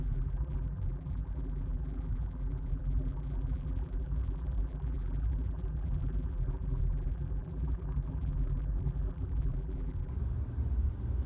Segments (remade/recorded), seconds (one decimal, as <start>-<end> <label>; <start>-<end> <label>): 0.0-10.1 remade; 10.1-11.3 recorded